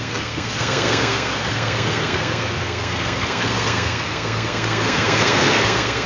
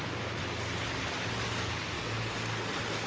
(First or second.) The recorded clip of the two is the second